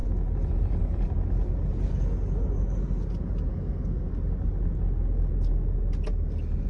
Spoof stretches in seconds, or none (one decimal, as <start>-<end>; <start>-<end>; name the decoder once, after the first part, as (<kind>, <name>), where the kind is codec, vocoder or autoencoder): 3.5-4.1 (codec, SNAC)